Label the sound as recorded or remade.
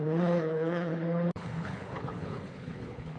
remade